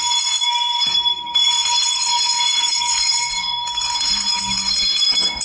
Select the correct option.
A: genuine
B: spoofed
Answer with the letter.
B